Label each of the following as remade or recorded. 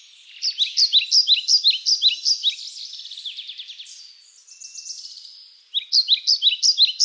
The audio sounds recorded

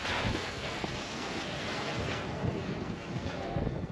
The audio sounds remade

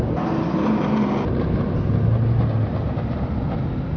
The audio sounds recorded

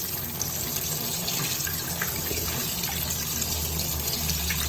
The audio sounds recorded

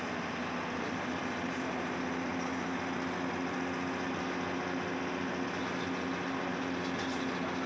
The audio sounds recorded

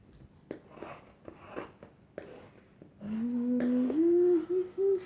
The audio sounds recorded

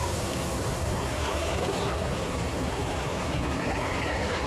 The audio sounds remade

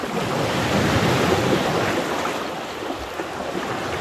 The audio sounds recorded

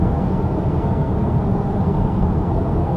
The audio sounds remade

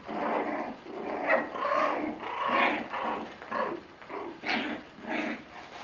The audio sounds recorded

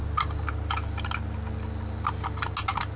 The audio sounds recorded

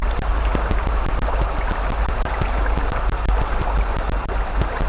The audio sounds recorded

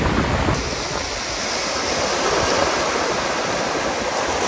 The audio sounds recorded